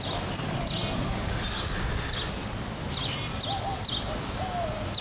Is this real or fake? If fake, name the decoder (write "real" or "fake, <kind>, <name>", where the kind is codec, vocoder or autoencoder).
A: real